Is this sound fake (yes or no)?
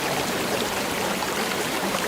yes